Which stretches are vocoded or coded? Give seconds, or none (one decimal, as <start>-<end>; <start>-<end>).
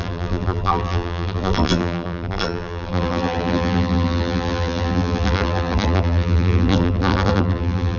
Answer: 0.0-8.0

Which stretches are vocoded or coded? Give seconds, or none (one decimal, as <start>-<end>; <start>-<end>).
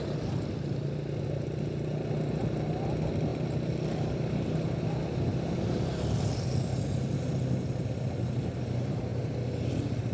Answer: none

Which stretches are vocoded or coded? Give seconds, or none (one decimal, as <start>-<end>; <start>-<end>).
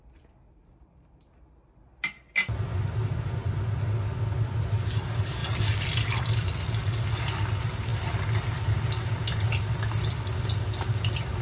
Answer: 5.4-6.2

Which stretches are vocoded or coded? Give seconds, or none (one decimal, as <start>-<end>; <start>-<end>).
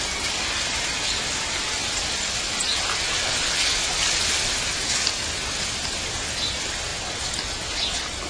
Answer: 1.8-6.1; 6.9-8.3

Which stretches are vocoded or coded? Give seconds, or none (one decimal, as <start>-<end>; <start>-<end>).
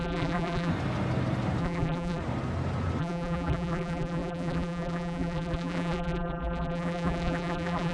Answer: 0.0-0.7; 1.6-2.2; 3.0-7.9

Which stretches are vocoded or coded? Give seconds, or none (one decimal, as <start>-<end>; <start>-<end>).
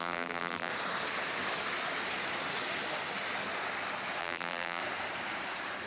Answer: 0.0-0.7; 4.2-4.8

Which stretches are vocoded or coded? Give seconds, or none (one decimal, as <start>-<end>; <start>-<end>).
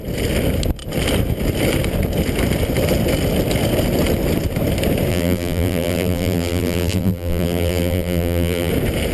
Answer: 5.1-8.7